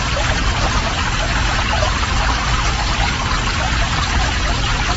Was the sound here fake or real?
real